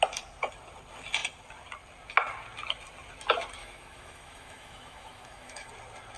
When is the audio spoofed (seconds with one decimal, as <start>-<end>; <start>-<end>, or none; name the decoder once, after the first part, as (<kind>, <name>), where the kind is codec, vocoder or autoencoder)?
3.6-5.7 (autoencoder, DAC-VAE)